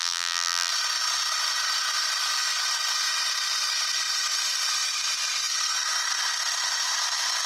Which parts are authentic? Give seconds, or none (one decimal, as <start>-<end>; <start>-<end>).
0.7-7.5